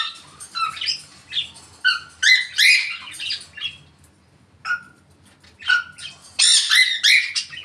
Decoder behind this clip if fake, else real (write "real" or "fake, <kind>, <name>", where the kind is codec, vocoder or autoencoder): real